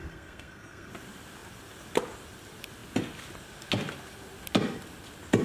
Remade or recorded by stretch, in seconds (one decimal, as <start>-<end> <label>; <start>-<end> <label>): 0.0-0.9 remade; 0.9-5.4 recorded